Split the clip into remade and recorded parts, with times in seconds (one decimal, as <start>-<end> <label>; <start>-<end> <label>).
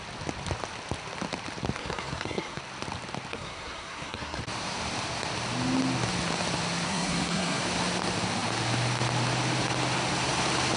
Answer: 0.0-1.8 recorded; 1.8-2.6 remade; 2.6-3.3 recorded; 3.3-4.4 remade; 4.4-6.9 recorded; 6.9-7.6 remade; 7.6-10.8 recorded